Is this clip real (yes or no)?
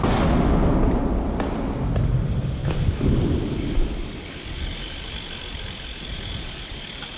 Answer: yes